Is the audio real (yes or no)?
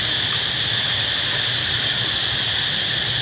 yes